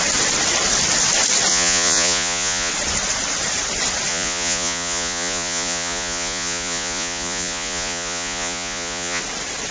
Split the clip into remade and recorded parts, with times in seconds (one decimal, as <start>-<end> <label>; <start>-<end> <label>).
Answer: 0.0-1.5 recorded; 1.5-2.7 remade; 2.7-4.1 recorded; 4.1-9.2 remade; 9.2-9.7 recorded